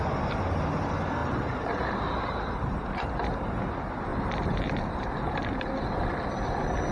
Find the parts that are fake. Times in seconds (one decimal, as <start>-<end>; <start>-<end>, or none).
1.2-3.5; 4.1-5.6